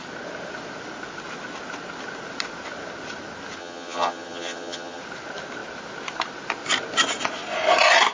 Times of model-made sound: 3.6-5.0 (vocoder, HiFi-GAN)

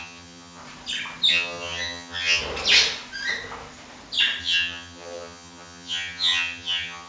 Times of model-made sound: 0.0-0.6 (vocoder, HiFi-GAN); 1.3-2.4; 4.4-7.1

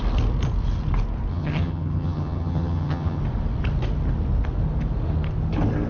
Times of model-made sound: 1.3-3.2 (vocoder, HiFi-GAN)

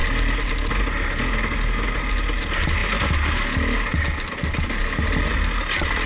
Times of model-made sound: none

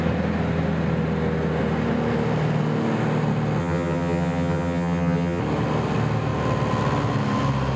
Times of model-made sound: 3.6-5.4 (vocoder, HiFi-GAN)

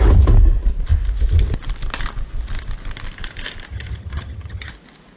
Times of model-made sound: 3.7-4.7 (vocoder, HiFi-GAN)